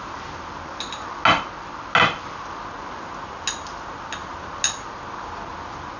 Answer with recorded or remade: recorded